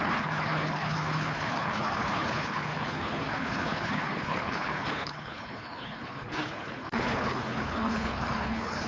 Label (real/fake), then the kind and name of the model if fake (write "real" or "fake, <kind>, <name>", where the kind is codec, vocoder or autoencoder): fake, codec, HILCodec